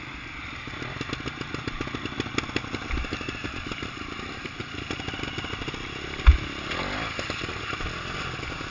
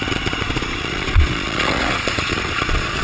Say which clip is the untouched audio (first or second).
first